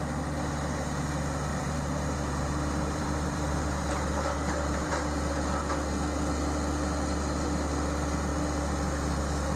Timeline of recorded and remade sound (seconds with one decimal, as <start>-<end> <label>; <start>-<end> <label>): 0.0-1.5 recorded; 1.5-4.9 remade; 4.9-9.6 recorded